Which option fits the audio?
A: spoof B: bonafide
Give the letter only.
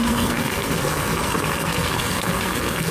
A